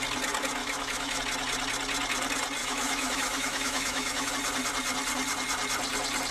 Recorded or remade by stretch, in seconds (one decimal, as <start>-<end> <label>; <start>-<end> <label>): 0.0-0.6 recorded; 0.6-1.2 remade; 1.2-2.6 recorded; 2.6-4.3 remade; 4.3-6.3 recorded